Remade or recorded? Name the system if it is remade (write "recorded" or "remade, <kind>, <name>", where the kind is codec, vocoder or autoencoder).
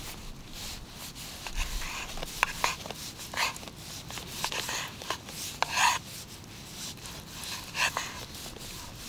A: recorded